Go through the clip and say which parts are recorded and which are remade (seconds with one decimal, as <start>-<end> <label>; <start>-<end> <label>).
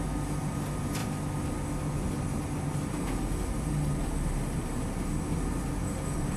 0.0-6.4 recorded